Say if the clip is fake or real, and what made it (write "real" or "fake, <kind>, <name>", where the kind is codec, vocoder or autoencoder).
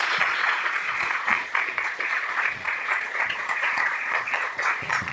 fake, vocoder, Vocos